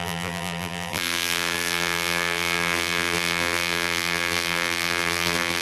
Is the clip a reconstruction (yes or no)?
yes